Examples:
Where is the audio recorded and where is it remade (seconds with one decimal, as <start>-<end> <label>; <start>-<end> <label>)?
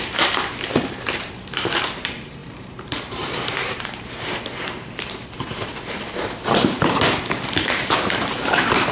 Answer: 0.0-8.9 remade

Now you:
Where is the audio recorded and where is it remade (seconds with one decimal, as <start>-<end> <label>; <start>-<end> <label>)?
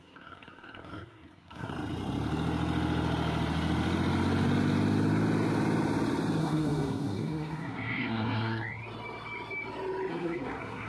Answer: 0.0-1.7 remade; 1.7-6.4 recorded; 6.4-8.8 remade; 8.8-10.1 recorded; 10.1-10.9 remade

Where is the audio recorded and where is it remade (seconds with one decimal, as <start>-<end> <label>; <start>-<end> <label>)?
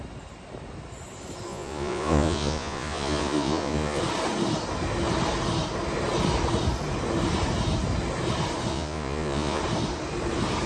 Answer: 0.0-1.5 recorded; 1.5-4.0 remade; 4.0-8.7 recorded; 8.7-9.6 remade; 9.6-10.7 recorded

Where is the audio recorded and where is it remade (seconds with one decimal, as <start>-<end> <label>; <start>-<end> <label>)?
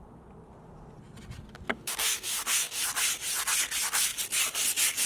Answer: 0.0-1.7 recorded; 1.7-2.8 remade; 2.8-5.1 recorded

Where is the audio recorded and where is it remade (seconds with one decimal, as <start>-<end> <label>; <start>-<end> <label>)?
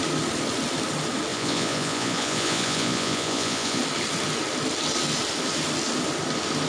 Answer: 0.0-1.3 recorded; 1.3-3.8 remade; 3.8-6.7 recorded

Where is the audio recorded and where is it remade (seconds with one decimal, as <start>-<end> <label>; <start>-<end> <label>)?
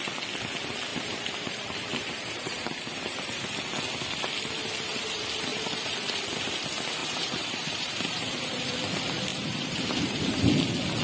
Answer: 0.0-0.9 recorded; 0.9-3.4 remade; 3.4-5.5 recorded; 5.5-6.0 remade; 6.0-7.0 recorded; 7.0-8.7 remade; 8.7-9.3 recorded; 9.3-10.4 remade; 10.4-11.0 recorded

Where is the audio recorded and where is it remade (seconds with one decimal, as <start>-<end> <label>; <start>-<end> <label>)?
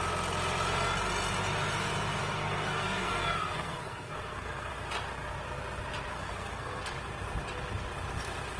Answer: 0.0-2.2 recorded; 2.2-4.7 remade; 4.7-6.1 recorded; 6.1-6.8 remade; 6.8-8.6 recorded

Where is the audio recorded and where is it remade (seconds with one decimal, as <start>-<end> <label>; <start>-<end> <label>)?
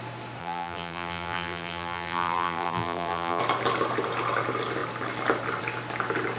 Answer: 0.0-0.4 recorded; 0.4-3.4 remade; 3.4-6.4 recorded